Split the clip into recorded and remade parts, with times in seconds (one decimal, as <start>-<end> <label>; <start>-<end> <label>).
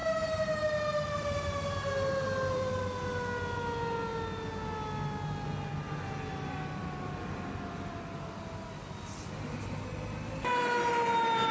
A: 0.0-2.8 remade; 2.8-11.5 recorded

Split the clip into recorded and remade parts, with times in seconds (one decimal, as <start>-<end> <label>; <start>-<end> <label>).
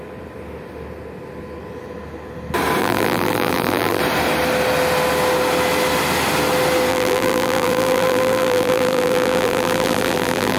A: 0.0-2.8 recorded; 2.8-4.0 remade; 4.0-6.9 recorded; 6.9-10.6 remade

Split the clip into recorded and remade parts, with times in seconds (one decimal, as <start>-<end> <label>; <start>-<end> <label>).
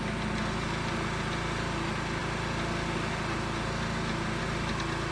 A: 0.0-5.1 recorded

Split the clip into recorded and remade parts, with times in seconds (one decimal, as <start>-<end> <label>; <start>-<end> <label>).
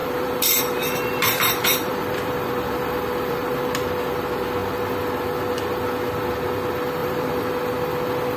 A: 0.0-4.1 remade; 4.1-7.0 recorded; 7.0-7.5 remade; 7.5-8.4 recorded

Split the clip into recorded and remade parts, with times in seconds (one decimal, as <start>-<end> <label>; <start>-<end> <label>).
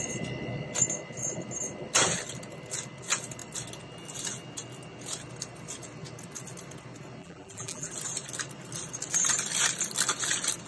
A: 0.0-7.2 recorded; 7.2-7.9 remade; 7.9-10.7 recorded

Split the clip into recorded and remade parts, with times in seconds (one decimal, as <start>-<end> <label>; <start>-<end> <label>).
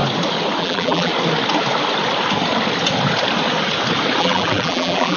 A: 0.0-0.6 recorded; 0.6-1.1 remade; 1.1-4.2 recorded; 4.2-5.2 remade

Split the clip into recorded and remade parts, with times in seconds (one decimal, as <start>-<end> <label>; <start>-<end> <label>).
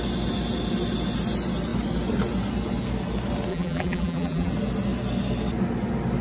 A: 0.0-3.5 recorded; 3.5-4.5 remade; 4.5-6.2 recorded